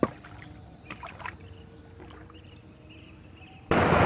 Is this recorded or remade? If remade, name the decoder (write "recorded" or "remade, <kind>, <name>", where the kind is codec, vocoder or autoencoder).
recorded